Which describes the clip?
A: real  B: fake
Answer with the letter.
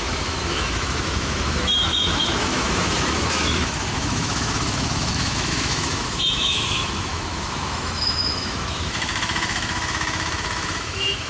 B